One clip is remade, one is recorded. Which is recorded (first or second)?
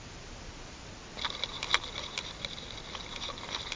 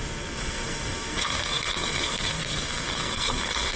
first